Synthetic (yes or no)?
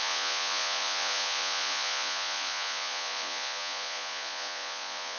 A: yes